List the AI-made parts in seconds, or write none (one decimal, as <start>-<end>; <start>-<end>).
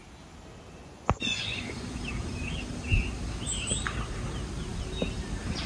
0.8-2.0